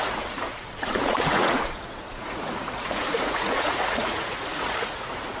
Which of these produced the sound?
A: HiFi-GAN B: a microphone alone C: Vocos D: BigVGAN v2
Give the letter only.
C